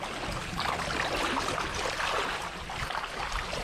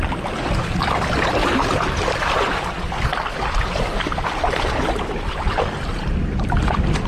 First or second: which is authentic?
first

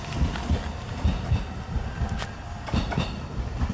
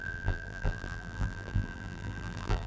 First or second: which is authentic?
first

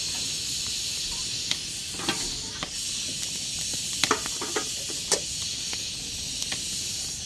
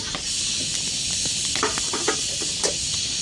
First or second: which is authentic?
first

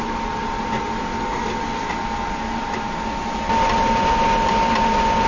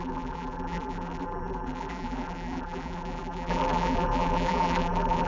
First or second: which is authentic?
first